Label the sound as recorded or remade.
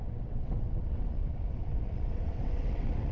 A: remade